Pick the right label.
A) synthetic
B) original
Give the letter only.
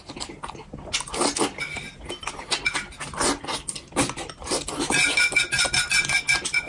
B